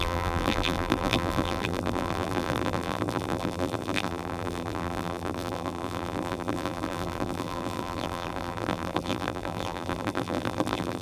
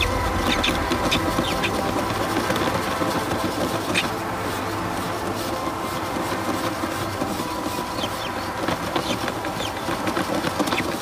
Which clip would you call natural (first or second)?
second